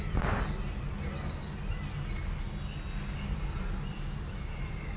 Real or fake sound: real